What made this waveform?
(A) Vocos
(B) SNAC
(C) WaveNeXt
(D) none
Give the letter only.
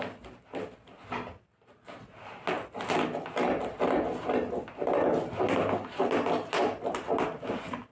D